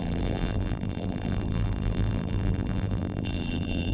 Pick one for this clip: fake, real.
fake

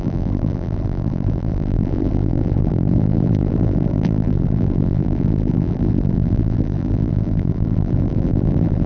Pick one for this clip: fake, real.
fake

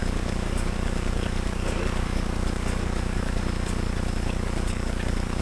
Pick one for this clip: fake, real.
fake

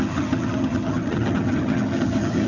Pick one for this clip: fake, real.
fake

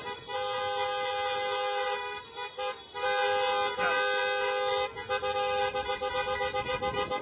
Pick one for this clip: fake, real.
real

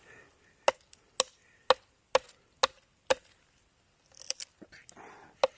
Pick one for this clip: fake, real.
real